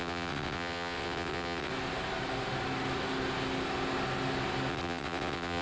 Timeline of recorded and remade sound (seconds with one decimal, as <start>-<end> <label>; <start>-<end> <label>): 0.0-1.7 remade; 1.7-4.7 recorded; 4.7-5.6 remade